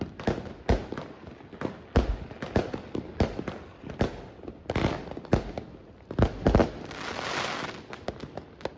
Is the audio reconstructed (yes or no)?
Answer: no